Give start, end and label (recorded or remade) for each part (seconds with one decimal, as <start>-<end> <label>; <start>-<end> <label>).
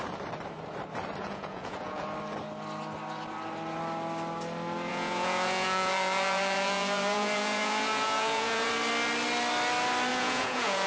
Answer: 0.0-1.2 recorded; 1.2-2.0 remade; 2.0-4.9 recorded; 4.9-8.7 remade; 8.7-10.1 recorded; 10.1-10.9 remade